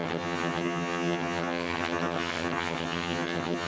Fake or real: fake